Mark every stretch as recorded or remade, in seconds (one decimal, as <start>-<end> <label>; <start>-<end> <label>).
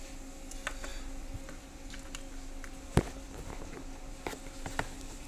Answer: 0.0-5.3 recorded